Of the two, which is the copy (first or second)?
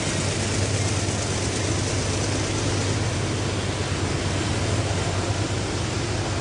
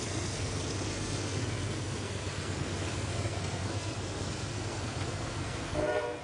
second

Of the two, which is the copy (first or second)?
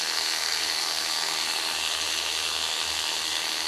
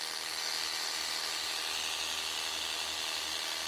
first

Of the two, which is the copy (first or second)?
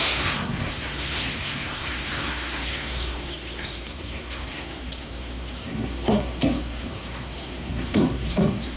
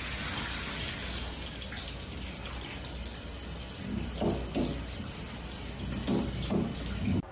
first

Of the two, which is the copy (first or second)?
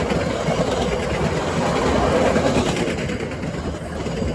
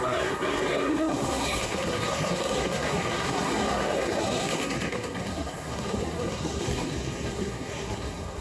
second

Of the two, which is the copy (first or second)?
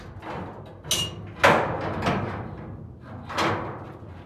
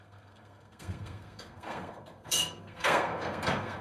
second